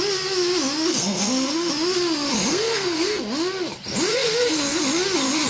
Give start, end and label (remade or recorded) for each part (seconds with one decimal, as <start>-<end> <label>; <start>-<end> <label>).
0.0-0.9 recorded; 0.9-1.7 remade; 1.7-2.5 recorded; 2.5-3.2 remade; 3.2-4.1 recorded; 4.1-4.8 remade; 4.8-5.5 recorded